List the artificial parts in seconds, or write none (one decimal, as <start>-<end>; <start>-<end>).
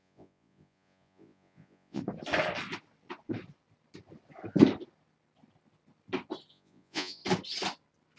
0.0-2.0; 6.5-7.2